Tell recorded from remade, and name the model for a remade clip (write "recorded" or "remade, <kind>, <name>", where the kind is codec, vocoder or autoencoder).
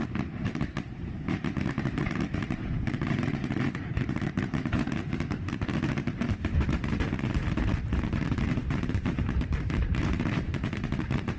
remade, vocoder, BigVGAN v2